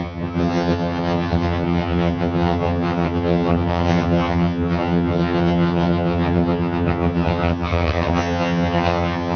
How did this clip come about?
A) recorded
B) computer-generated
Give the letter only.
B